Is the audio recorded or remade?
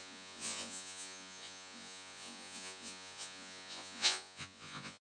remade